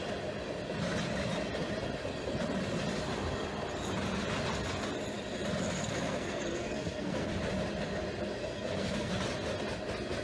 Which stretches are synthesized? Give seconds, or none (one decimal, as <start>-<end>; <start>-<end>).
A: 5.8-7.3; 8.4-9.1

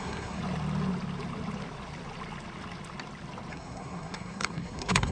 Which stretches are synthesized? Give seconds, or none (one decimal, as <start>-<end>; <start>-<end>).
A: 0.0-0.4; 3.5-5.1

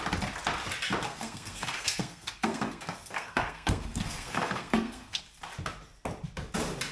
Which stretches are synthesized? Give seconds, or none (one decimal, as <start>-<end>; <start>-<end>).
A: 1.1-5.2

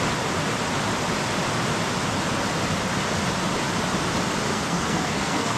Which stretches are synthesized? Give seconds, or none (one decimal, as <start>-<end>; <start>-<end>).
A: 4.5-5.6

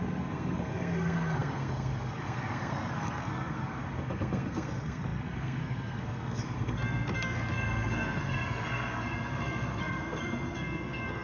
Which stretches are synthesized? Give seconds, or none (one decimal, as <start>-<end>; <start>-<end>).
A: 0.0-11.2

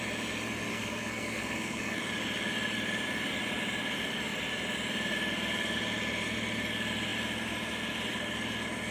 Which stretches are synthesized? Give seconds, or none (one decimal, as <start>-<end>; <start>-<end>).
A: 0.7-2.0

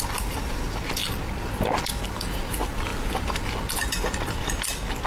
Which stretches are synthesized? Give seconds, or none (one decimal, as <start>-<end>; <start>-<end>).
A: none